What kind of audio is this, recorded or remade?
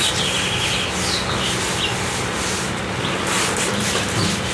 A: recorded